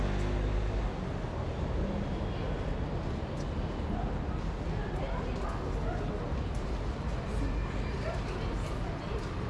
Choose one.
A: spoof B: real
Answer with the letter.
B